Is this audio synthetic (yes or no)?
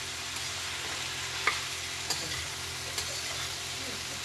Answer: no